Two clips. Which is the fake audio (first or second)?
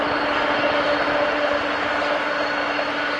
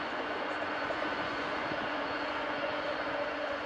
second